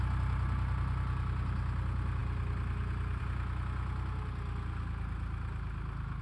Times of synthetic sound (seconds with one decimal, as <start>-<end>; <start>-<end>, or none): none